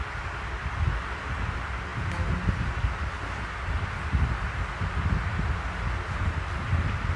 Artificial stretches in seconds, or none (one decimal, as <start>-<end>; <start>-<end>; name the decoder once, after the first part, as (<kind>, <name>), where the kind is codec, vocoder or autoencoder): none